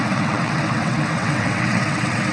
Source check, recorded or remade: remade